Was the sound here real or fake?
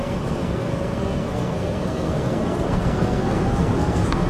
fake